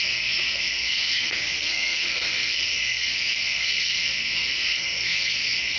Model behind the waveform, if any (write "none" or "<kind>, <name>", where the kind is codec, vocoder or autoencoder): codec, SNAC